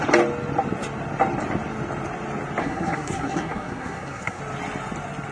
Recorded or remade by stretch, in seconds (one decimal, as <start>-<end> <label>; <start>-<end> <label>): 0.0-2.6 recorded; 2.6-4.4 remade; 4.4-5.3 recorded